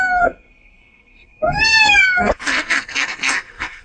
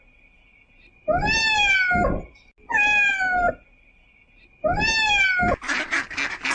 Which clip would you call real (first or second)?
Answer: second